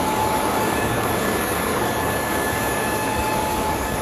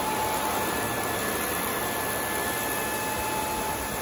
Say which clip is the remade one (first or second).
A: first